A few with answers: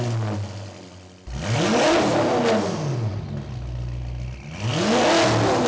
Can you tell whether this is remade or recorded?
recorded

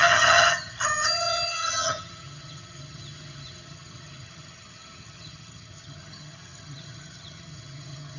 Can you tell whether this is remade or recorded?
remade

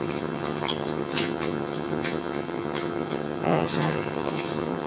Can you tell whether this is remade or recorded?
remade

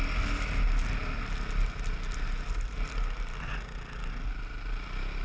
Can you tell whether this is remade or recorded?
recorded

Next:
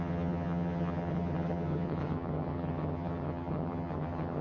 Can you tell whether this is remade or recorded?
remade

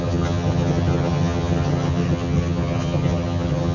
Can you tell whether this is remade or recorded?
remade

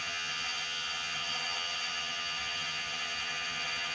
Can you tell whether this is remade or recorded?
remade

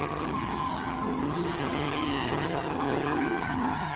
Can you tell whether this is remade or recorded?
remade